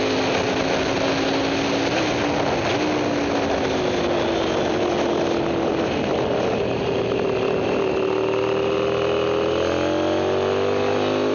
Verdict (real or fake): real